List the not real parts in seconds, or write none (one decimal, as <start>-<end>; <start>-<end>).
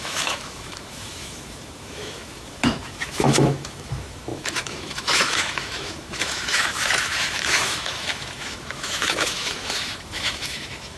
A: 0.0-11.0